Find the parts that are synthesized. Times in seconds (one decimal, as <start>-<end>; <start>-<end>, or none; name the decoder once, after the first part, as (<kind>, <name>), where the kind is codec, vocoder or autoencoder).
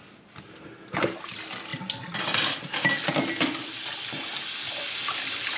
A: none